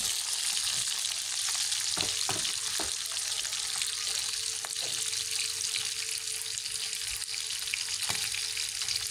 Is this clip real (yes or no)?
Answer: yes